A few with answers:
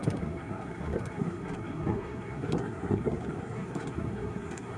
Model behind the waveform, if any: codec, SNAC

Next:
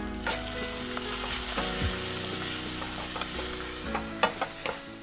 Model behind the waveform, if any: none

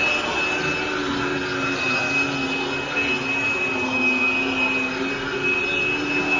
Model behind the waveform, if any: none